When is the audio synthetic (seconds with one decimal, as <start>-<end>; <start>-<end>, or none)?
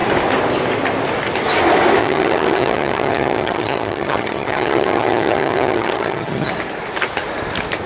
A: 2.0-6.5